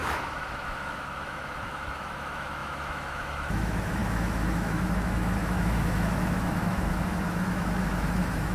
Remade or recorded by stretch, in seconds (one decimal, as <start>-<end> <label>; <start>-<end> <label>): 0.0-8.5 remade